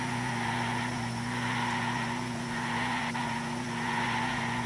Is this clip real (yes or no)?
no